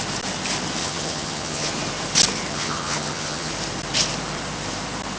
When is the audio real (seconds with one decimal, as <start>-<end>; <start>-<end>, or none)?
0.0-0.8; 1.7-2.5; 3.5-5.2